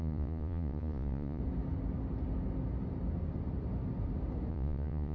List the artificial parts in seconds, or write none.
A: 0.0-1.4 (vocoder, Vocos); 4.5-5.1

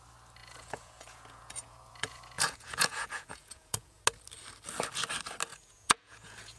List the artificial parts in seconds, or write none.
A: 0.4-4.0 (vocoder, Vocos); 5.5-6.6

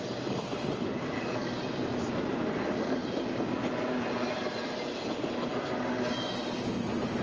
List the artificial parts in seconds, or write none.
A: none

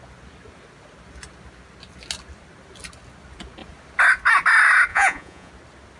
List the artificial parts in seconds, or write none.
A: 4.9-5.5 (vocoder, Vocos)

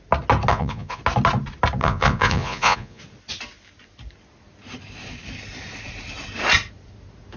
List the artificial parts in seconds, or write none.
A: 0.5-1.0 (vocoder, Vocos); 1.8-3.0

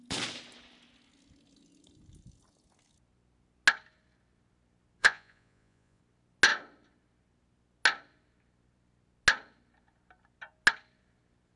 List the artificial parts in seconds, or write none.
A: 5.0-6.0 (vocoder, Vocos)